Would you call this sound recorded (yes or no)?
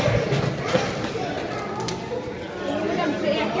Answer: yes